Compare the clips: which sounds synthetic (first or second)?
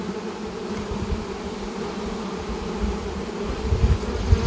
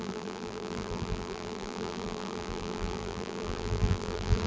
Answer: second